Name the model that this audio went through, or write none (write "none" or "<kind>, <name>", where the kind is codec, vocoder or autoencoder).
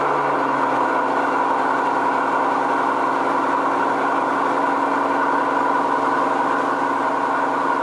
none